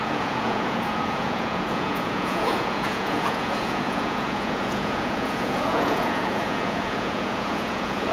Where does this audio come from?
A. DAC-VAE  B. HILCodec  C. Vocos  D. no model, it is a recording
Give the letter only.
C